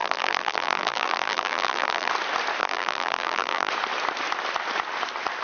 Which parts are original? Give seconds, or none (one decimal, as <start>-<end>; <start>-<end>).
2.1-2.6; 3.7-5.4